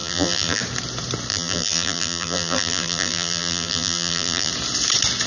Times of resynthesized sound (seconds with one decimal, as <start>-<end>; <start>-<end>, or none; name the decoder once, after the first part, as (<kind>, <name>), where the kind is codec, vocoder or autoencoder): 0.0-0.6 (vocoder, BigVGAN v2); 1.3-4.5